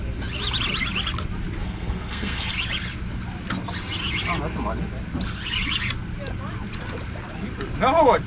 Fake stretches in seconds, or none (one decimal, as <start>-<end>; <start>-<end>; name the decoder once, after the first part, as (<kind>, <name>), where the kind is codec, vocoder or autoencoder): 1.6-2.5 (codec, SNAC)

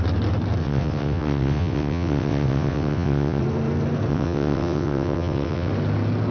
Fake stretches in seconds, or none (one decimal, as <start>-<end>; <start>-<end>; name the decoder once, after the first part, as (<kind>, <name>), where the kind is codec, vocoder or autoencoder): 0.6-3.4 (vocoder, WaveNeXt); 4.1-5.7

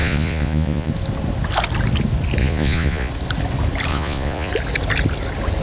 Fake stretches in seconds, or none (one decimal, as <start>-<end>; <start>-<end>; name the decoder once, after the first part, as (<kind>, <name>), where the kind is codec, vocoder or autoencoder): 0.0-0.9 (vocoder, Vocos); 2.4-3.1; 3.9-4.5

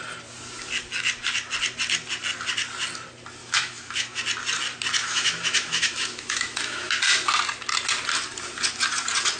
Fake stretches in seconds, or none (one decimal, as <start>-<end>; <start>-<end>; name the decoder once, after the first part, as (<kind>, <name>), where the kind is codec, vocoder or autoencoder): 3.4-4.2 (autoencoder, DAC-VAE); 5.0-6.9

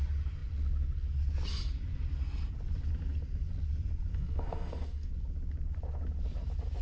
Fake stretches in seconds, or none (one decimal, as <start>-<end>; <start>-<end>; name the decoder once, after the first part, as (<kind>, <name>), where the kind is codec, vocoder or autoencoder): 4.1-5.1 (codec, SNAC)